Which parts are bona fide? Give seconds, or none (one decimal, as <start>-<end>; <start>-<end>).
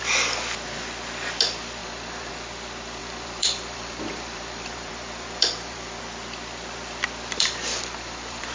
0.0-1.8; 2.3-3.0; 6.0-7.7